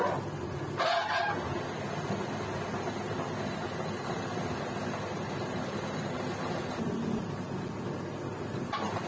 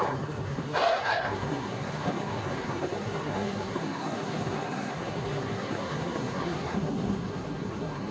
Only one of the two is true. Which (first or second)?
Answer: first